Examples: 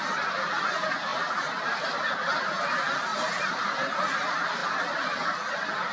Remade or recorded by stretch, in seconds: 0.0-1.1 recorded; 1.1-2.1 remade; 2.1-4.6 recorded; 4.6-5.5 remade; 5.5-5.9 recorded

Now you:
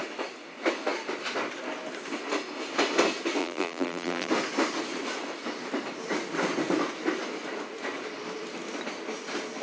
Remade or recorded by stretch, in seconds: 0.0-3.4 recorded; 3.4-4.3 remade; 4.3-9.6 recorded

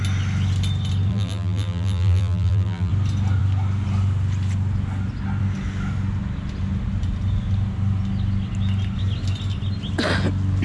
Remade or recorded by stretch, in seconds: 0.0-1.1 recorded; 1.1-2.9 remade; 2.9-10.6 recorded

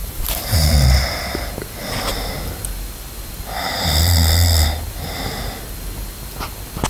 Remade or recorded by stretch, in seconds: 0.0-0.7 remade; 0.7-6.9 recorded

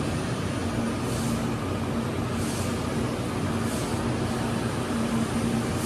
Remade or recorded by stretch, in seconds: 0.0-0.6 remade; 0.6-4.1 recorded; 4.1-5.9 remade

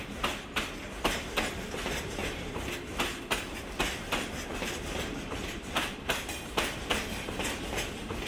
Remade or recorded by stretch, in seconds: 0.0-4.5 recorded; 4.5-6.9 remade; 6.9-8.3 recorded

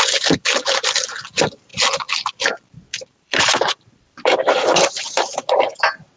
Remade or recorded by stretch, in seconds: 0.0-2.9 recorded; 2.9-6.2 remade